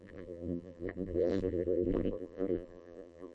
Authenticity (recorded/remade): remade